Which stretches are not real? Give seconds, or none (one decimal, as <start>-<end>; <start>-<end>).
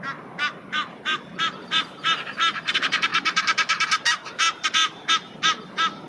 0.0-6.1